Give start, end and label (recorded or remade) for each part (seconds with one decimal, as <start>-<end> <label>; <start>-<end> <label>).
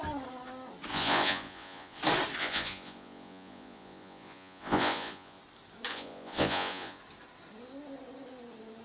0.0-0.9 recorded; 0.9-2.0 remade; 2.0-2.4 recorded; 2.4-5.4 remade; 5.4-5.9 recorded; 5.9-7.0 remade; 7.0-8.8 recorded